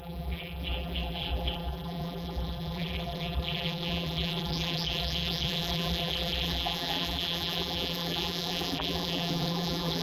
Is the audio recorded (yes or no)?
no